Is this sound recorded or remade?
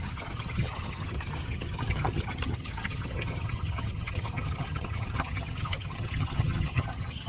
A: remade